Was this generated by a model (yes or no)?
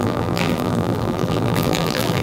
yes